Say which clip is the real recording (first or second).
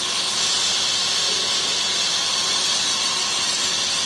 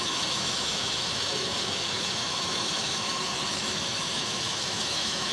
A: first